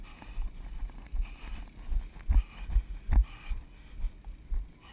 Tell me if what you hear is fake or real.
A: real